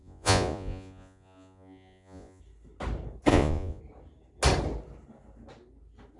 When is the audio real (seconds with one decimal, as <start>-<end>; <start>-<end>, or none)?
2.4-3.3; 3.8-6.2